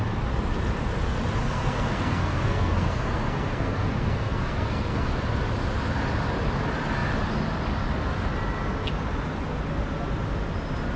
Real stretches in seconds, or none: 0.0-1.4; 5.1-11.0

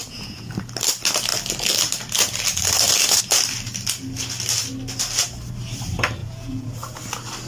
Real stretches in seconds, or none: 0.5-6.2; 7.0-7.5

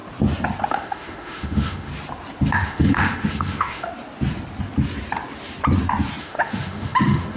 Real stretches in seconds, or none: 0.0-0.7; 1.9-2.5; 3.9-6.2

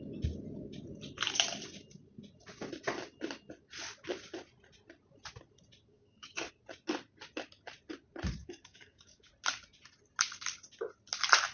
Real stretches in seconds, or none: 0.0-5.9; 6.5-8.4; 9.3-11.5

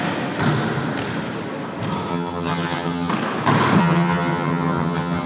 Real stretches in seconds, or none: 0.0-2.1; 3.1-3.8

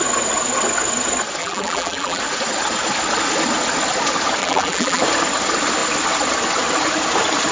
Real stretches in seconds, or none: 0.0-1.4; 2.2-4.4; 5.0-7.5